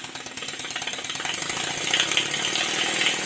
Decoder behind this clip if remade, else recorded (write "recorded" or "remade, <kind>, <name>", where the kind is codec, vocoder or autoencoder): remade, vocoder, BigVGAN v2